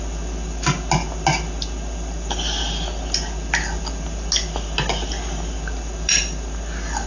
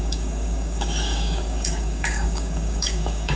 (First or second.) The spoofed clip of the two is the second